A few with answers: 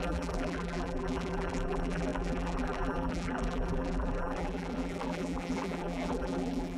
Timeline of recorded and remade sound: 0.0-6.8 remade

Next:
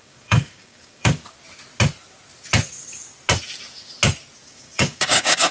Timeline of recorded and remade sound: 0.0-1.2 remade; 1.2-4.5 recorded; 4.5-5.5 remade

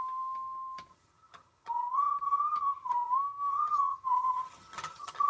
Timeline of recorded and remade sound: 0.0-0.9 recorded; 0.9-3.1 remade; 3.1-3.5 recorded; 3.5-5.3 remade